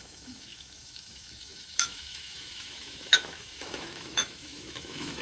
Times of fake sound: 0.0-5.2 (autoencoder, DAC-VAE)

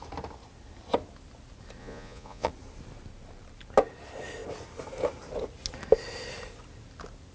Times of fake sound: 1.8-2.5 (vocoder, Vocos)